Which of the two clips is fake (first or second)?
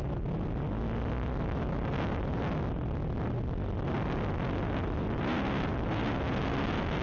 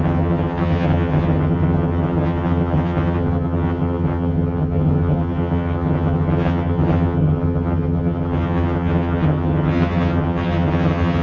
second